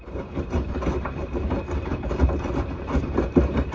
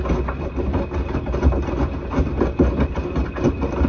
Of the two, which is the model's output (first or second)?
first